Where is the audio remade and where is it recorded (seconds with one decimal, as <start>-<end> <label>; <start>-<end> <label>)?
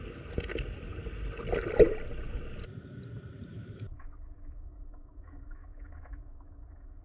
0.0-3.5 recorded; 3.5-7.0 remade